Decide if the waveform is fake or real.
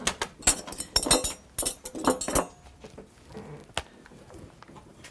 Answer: real